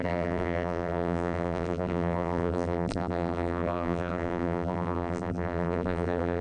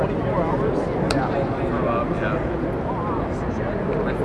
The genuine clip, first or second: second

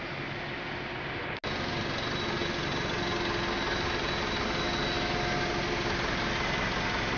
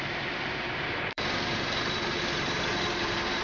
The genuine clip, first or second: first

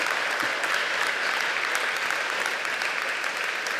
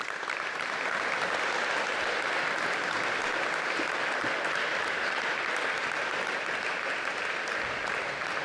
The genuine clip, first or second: first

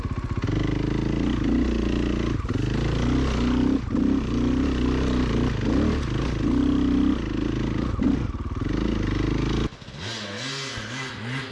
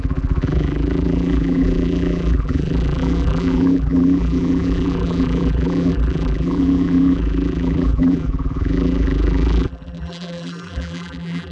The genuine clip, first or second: first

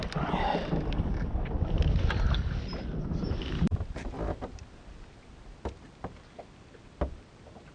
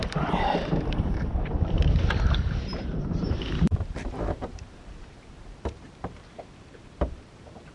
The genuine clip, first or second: first